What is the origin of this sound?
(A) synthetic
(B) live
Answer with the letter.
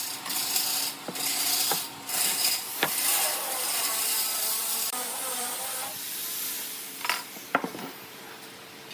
A